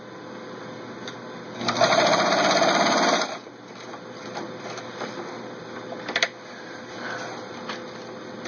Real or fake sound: real